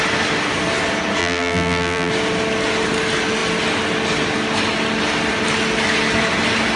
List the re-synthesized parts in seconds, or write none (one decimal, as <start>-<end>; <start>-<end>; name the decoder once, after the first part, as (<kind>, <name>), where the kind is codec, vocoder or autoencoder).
1.2-2.1 (vocoder, BigVGAN v2)